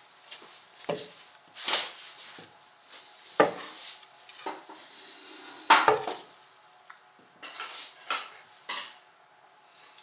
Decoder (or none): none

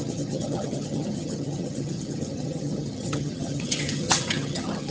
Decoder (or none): vocoder, HiFi-GAN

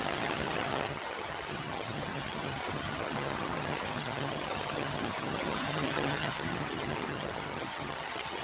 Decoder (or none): vocoder, HiFi-GAN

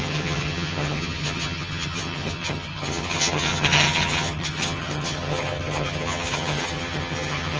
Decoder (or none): vocoder, HiFi-GAN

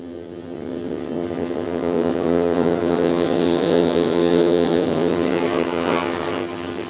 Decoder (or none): vocoder, HiFi-GAN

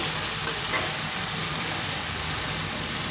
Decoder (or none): none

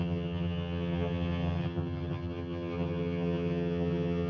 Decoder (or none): vocoder, HiFi-GAN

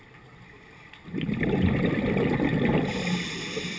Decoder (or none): none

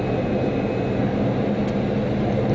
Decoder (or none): none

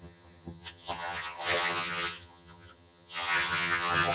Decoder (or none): vocoder, HiFi-GAN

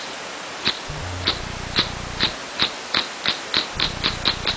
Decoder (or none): none